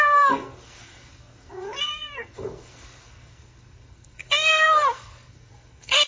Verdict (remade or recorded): remade